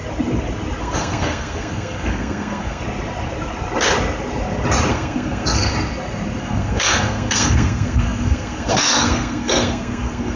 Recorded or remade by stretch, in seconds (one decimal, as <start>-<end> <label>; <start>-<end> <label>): 0.0-0.8 recorded; 0.8-2.8 remade; 2.8-4.9 recorded; 4.9-5.7 remade; 5.7-6.4 recorded; 6.4-10.4 remade